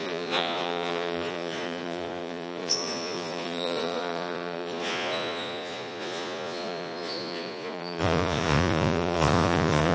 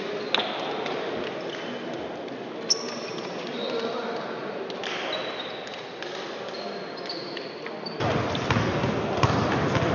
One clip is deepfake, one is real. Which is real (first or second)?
second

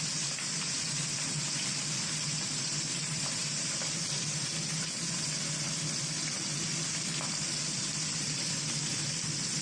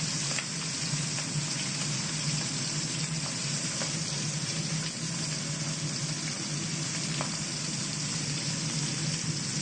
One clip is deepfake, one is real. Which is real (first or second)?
second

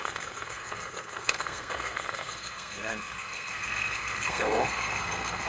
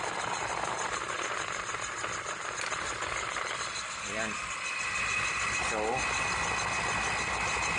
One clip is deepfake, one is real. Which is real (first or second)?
second